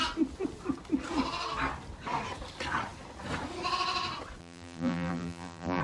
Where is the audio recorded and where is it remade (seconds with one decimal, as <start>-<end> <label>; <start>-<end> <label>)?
0.0-4.4 recorded; 4.4-5.8 remade